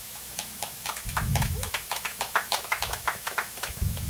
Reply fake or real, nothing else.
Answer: fake